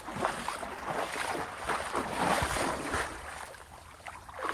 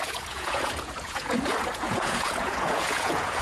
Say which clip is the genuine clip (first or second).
first